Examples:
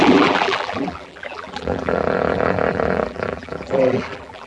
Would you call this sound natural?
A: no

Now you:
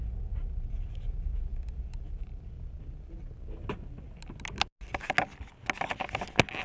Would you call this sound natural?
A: yes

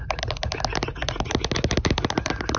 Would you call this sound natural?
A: yes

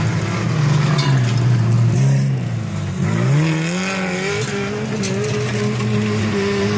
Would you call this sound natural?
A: yes